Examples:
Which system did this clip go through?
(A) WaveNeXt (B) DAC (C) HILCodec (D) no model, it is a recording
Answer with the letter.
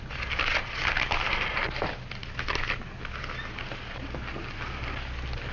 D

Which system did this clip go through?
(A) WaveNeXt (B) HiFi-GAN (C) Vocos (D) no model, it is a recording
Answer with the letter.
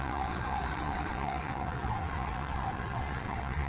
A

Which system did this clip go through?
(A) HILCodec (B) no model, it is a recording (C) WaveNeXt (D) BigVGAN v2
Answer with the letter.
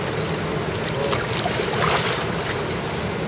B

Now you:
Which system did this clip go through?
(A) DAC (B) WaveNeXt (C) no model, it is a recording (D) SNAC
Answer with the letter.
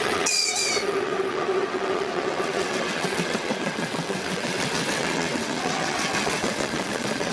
B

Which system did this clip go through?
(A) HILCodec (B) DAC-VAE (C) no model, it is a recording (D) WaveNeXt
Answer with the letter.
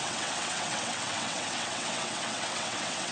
D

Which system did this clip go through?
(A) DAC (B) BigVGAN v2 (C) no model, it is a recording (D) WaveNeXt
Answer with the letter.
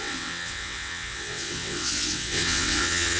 D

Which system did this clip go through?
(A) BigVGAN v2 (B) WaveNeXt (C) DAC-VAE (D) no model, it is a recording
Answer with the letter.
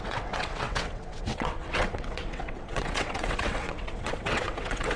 B